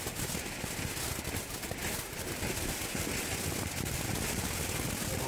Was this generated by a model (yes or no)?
no